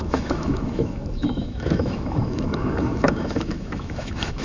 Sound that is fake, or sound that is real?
fake